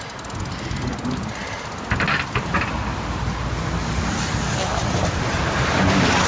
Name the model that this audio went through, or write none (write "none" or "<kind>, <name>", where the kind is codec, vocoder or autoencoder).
none